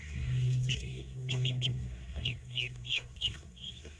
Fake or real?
fake